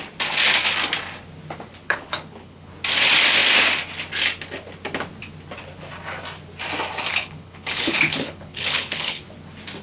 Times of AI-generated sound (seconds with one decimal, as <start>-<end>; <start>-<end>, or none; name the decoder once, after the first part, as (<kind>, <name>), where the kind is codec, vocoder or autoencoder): 1.8-2.7 (codec, HILCodec); 7.1-9.2